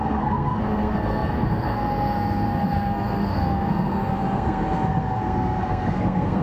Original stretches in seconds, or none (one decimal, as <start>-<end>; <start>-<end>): none